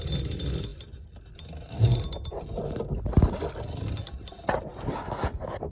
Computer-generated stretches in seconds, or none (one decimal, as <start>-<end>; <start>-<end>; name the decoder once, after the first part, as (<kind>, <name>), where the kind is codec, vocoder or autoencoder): none